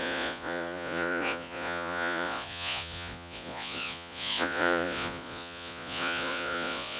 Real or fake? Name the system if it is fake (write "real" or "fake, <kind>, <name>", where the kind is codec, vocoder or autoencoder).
fake, vocoder, Vocos